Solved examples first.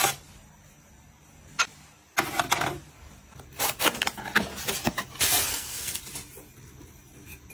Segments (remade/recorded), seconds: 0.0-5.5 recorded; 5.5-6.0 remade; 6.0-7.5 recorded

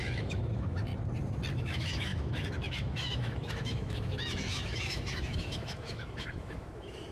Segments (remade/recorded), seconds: 0.0-0.9 remade; 0.9-1.5 recorded; 1.5-7.1 remade

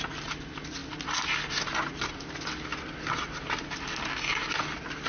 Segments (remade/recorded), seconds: 0.0-5.1 recorded

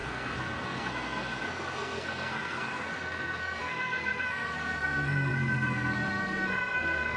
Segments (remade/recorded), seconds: 0.0-7.2 remade

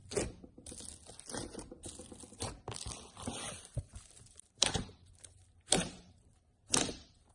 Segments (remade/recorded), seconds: 0.0-3.5 recorded; 3.5-7.3 remade

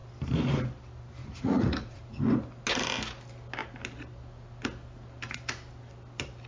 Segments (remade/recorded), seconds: 0.0-1.2 recorded; 1.2-2.0 remade; 2.0-6.5 recorded

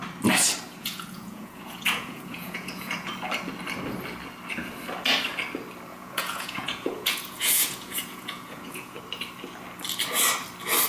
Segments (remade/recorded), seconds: 0.0-0.8 recorded; 0.8-3.1 remade; 3.1-5.9 recorded; 5.9-9.0 remade; 9.0-10.9 recorded

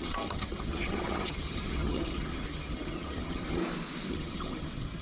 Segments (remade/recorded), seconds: 0.0-3.6 remade; 3.6-4.1 recorded; 4.1-5.0 remade